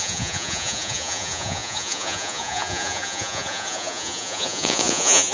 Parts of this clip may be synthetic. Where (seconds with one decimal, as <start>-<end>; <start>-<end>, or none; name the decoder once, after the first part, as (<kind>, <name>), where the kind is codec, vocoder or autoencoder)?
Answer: 0.0-5.3 (vocoder, Vocos)